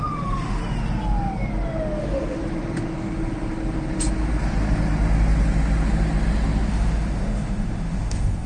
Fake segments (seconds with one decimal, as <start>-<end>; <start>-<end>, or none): 0.0-0.6; 2.0-2.4; 6.7-8.5